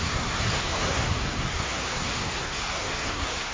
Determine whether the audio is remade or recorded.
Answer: remade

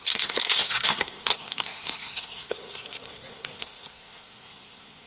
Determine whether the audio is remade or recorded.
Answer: remade